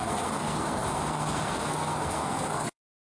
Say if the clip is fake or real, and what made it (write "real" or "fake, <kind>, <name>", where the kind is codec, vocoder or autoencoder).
fake, codec, SNAC